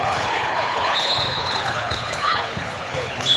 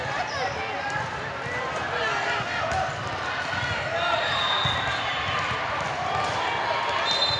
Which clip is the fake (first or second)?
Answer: first